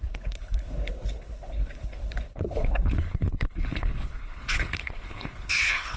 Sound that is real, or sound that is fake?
fake